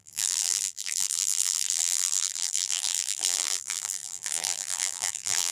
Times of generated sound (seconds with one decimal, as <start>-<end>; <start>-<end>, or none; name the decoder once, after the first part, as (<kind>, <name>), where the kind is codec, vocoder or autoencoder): 0.0-5.5 (vocoder, BigVGAN v2)